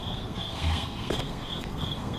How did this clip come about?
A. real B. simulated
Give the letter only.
B